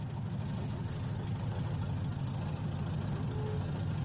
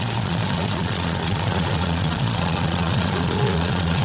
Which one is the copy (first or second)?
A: second